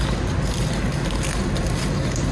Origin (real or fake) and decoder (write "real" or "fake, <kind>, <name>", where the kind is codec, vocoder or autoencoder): real